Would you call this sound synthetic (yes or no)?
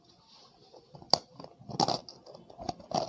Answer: no